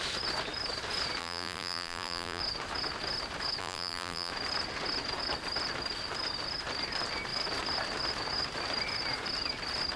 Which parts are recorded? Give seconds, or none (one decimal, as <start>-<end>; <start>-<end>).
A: 0.0-1.2; 2.4-3.6; 4.3-10.0